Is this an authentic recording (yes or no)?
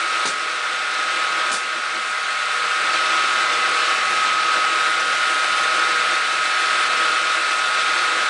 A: yes